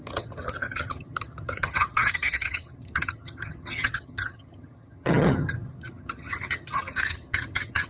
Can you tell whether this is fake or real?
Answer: fake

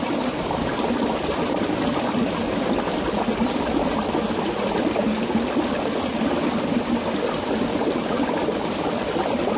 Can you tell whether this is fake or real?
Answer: real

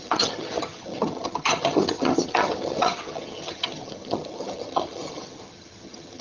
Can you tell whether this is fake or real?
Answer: fake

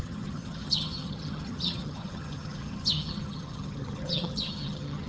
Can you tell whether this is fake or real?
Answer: fake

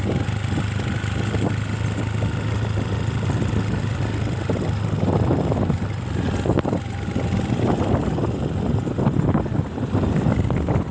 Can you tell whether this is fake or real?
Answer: real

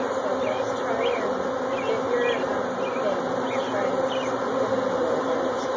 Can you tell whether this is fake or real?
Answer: real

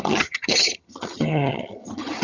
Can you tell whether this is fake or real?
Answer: fake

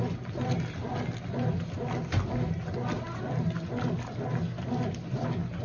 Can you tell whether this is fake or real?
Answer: real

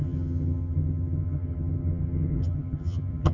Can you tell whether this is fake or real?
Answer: fake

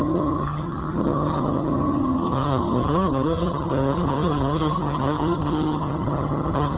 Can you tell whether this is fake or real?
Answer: fake